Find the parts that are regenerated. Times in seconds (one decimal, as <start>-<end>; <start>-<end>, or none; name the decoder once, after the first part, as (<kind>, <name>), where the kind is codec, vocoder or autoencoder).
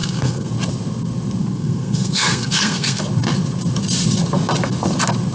0.0-0.5 (codec, SNAC); 1.4-3.0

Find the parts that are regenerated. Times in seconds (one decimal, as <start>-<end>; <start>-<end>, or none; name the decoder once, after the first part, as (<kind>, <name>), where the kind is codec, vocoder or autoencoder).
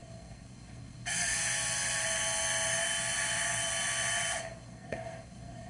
0.0-1.4 (codec, SNAC); 4.4-5.7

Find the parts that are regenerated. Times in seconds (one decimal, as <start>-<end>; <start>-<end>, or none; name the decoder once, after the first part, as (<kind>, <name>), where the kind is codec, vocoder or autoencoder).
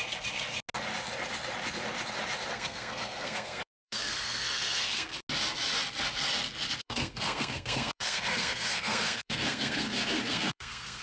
2.5-5.1 (codec, SNAC); 6.8-11.0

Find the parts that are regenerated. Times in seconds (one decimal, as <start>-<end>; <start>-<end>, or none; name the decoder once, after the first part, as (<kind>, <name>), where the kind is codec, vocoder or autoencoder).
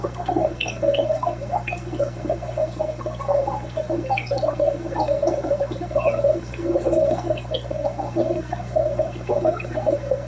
0.0-10.3 (codec, SNAC)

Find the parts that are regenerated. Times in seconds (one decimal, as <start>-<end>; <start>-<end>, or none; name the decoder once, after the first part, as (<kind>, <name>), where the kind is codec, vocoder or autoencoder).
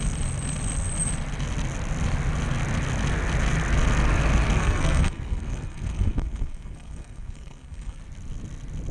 4.6-8.0 (codec, SNAC)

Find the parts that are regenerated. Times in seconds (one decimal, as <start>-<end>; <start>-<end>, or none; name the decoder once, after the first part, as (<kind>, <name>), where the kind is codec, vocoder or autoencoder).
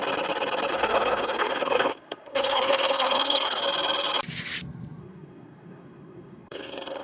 0.7-3.6 (codec, SNAC); 5.0-7.0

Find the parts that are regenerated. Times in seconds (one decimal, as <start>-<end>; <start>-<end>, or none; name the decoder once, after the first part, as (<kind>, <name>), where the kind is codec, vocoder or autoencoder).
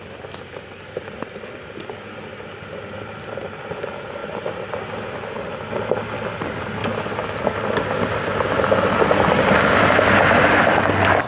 none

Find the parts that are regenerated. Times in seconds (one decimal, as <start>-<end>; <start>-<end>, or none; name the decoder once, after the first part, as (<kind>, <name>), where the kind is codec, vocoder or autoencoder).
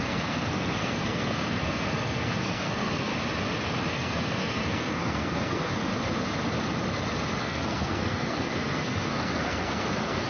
0.0-3.1 (codec, SNAC); 3.9-5.9; 7.4-10.3